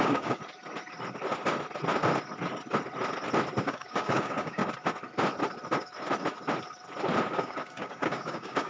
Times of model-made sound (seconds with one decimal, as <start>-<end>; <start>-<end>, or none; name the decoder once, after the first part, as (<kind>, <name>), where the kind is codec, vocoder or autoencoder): 0.0-0.4 (codec, DAC); 3.6-4.6; 7.3-8.7

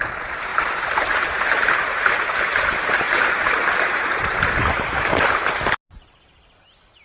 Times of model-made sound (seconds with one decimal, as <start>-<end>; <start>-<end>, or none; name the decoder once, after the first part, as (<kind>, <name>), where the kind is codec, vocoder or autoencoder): 0.5-4.2 (vocoder, BigVGAN v2)

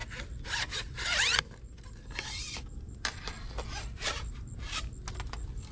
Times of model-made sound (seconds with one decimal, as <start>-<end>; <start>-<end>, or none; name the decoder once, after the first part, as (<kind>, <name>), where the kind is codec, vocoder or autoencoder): none

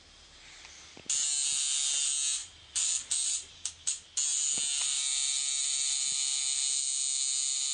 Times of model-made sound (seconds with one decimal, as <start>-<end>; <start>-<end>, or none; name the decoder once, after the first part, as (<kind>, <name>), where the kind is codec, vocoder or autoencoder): 2.4-3.9 (vocoder, BigVGAN v2)

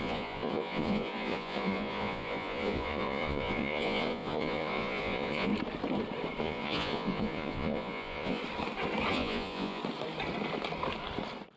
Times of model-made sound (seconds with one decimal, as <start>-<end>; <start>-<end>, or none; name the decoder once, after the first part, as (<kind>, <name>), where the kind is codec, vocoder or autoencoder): 0.0-5.5 (vocoder, Vocos); 6.4-8.4; 9.1-9.8

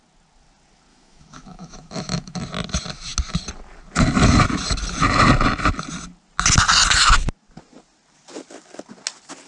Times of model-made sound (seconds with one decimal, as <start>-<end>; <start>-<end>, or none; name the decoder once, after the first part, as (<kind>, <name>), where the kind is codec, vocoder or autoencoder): 0.9-2.4 (autoencoder, DAC-VAE)